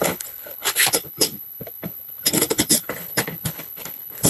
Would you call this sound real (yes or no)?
no